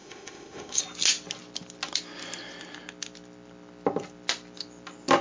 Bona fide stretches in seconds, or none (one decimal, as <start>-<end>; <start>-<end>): 0.8-5.2